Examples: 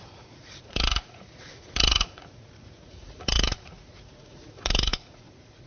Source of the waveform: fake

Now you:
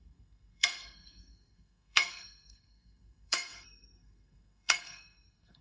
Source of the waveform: fake